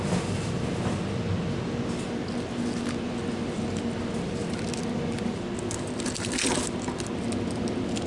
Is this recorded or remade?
recorded